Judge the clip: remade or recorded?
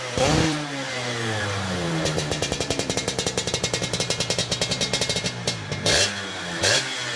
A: remade